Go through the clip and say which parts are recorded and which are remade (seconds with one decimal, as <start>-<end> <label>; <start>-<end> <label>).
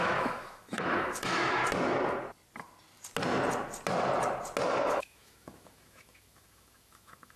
0.0-1.6 remade; 1.6-4.9 recorded; 4.9-7.4 remade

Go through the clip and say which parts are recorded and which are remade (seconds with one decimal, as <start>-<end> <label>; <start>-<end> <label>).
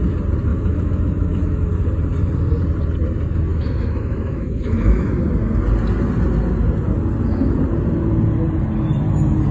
0.0-0.5 recorded; 0.5-1.7 remade; 1.7-3.5 recorded; 3.5-5.2 remade; 5.2-9.5 recorded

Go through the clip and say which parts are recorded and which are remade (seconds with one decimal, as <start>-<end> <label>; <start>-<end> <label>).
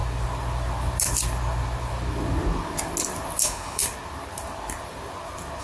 0.0-3.4 recorded; 3.4-3.8 remade; 3.8-5.6 recorded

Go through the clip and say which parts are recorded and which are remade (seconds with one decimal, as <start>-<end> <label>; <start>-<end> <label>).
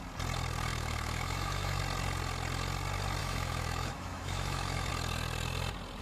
0.0-0.7 recorded; 0.7-1.8 remade; 1.8-3.2 recorded; 3.2-4.9 remade; 4.9-6.0 recorded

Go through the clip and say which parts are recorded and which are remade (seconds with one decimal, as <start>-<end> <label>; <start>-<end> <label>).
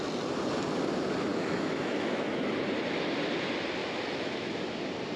0.0-1.3 recorded; 1.3-2.5 remade; 2.5-3.8 recorded; 3.8-4.5 remade; 4.5-5.2 recorded